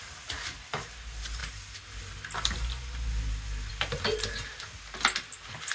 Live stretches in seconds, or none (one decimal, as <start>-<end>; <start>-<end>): 0.0-5.7